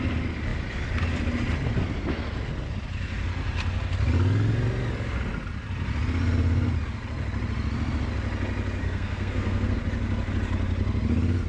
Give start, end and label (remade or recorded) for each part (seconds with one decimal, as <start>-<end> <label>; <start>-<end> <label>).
0.0-8.8 recorded; 8.8-9.8 remade; 9.8-11.5 recorded